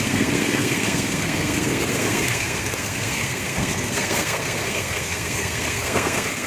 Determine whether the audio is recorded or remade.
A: remade